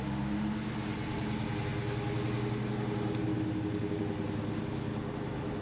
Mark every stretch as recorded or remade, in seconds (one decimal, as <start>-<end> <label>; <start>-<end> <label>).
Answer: 0.0-5.6 recorded